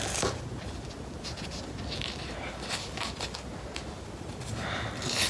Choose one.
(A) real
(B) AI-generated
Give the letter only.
A